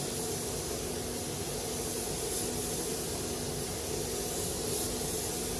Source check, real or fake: real